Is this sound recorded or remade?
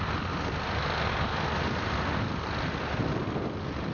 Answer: recorded